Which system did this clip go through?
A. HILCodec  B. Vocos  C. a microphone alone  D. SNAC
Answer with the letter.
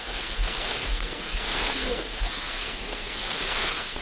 D